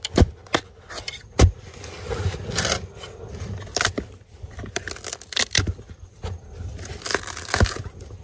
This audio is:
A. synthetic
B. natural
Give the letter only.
B